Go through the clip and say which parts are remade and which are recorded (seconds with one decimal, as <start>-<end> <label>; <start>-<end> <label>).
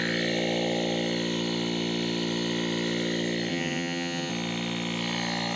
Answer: 0.0-3.5 recorded; 3.5-4.3 remade; 4.3-5.6 recorded